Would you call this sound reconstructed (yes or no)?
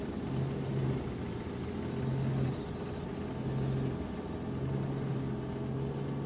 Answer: no